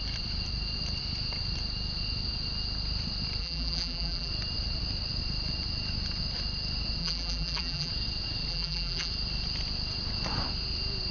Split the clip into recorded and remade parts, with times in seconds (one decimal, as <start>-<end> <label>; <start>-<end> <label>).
0.0-3.4 recorded; 3.4-4.3 remade; 4.3-7.0 recorded; 7.0-7.9 remade; 7.9-8.5 recorded; 8.5-9.1 remade; 9.1-11.1 recorded